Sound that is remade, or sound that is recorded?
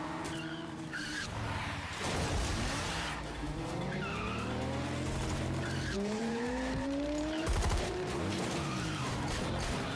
remade